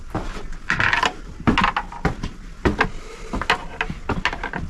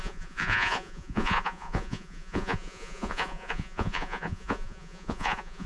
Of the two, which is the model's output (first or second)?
second